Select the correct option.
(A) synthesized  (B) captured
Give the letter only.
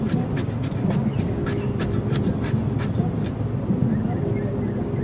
B